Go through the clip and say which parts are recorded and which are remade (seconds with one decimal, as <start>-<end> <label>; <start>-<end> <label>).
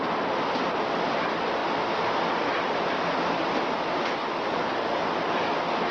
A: 0.0-5.9 recorded